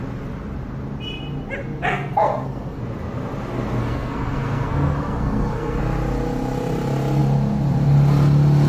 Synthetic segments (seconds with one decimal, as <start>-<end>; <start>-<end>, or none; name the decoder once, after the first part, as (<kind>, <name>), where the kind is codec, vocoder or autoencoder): 1.9-2.8 (codec, SNAC); 3.8-5.8